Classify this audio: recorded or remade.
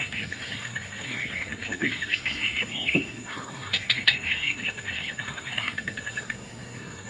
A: remade